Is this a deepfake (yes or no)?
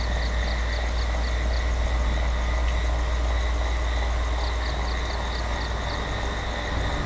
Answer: no